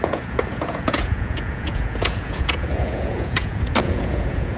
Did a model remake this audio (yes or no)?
yes